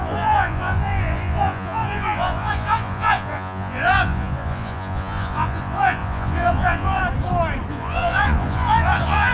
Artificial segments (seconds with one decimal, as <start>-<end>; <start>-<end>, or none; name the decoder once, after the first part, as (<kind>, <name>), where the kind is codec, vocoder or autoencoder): 0.0-7.0 (vocoder, Vocos); 7.7-9.3